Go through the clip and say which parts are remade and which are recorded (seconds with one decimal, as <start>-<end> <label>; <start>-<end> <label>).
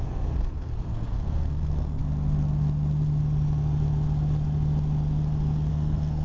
0.0-2.0 remade; 2.0-5.7 recorded; 5.7-6.2 remade